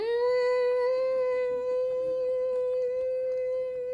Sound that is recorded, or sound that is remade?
recorded